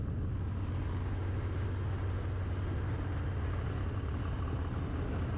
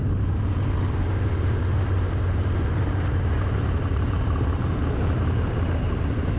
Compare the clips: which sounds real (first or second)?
first